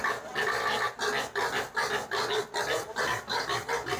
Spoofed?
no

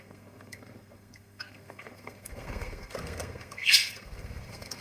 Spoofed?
yes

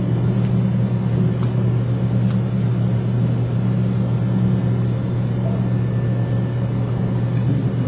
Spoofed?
no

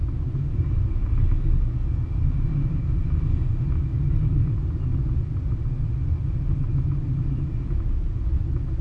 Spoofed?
no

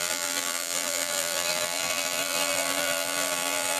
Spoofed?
yes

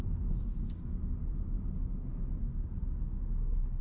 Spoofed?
no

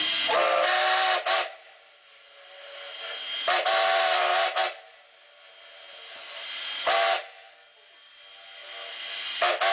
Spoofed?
no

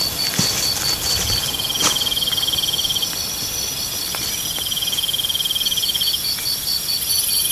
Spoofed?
no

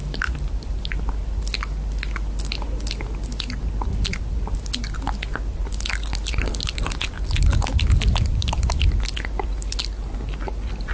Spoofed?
no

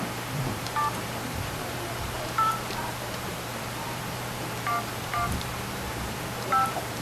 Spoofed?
yes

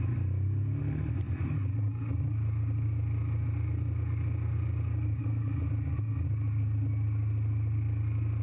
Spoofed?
no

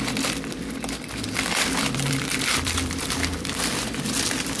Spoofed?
yes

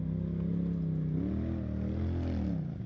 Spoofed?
no